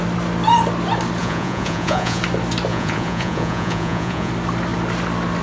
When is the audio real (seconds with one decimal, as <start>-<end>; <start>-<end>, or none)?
0.0-1.2; 2.2-2.7; 4.3-5.4